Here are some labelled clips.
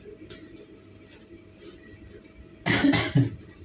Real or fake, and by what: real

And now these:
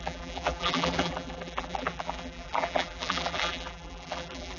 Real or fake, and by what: fake, vocoder, BigVGAN v2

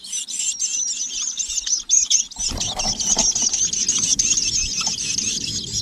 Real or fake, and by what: real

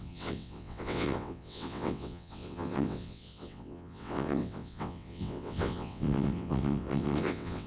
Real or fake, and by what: fake, vocoder, WaveNeXt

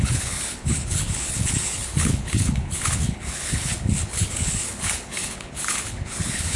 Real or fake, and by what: fake, codec, HILCodec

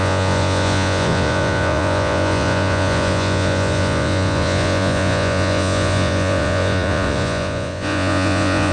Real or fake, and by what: fake, vocoder, Vocos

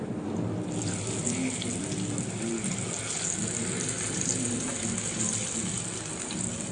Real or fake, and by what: real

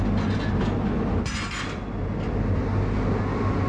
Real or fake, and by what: real